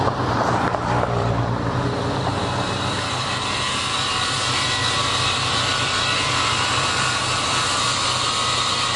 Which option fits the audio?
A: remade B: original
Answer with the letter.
A